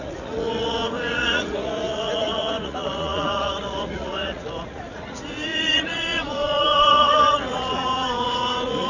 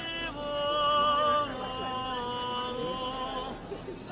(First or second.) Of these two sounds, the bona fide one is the second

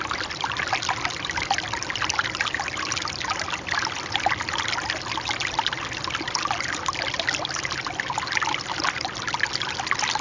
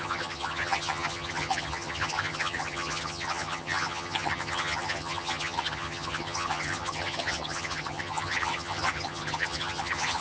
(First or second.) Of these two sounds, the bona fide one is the first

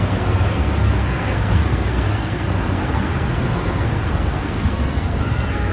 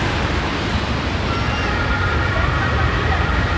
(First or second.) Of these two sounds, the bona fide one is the second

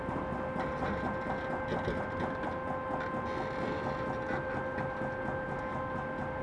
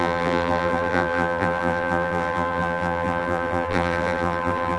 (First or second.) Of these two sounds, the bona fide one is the first